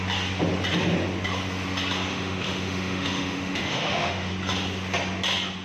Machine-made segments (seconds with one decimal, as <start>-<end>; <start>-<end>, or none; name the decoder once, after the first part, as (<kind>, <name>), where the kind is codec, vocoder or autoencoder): 2.1-4.3 (autoencoder, DAC-VAE)